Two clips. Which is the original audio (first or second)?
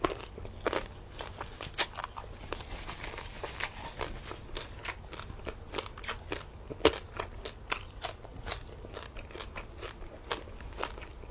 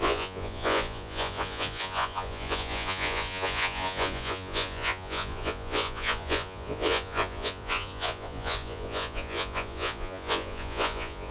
first